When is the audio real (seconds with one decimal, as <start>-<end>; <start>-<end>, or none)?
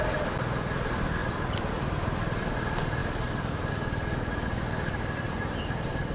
0.0-6.1